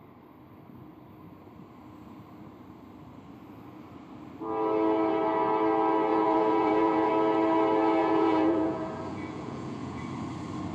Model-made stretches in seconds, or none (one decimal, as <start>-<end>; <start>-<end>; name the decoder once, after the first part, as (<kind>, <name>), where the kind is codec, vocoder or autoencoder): 6.1-7.1 (vocoder, Vocos); 8.0-10.0